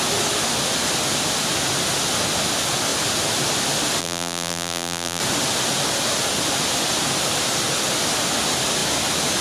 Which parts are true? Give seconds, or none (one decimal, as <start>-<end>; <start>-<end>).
0.0-4.0; 5.2-9.4